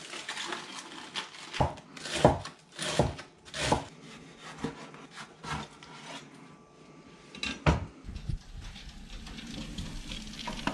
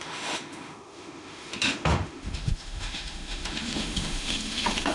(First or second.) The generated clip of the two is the second